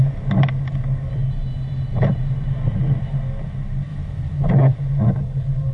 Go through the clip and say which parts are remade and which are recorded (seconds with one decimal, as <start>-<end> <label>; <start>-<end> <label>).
0.0-5.7 recorded